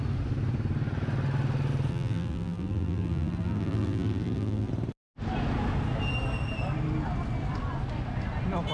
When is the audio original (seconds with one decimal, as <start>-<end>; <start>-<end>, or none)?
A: 0.0-1.9; 4.7-8.7